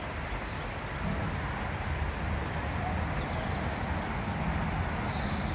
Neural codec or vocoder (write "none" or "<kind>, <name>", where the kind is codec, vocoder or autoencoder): none